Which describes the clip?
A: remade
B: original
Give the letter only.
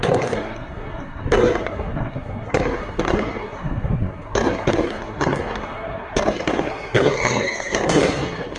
A